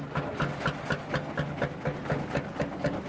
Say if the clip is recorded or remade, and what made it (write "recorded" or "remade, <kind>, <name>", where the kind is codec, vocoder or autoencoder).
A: recorded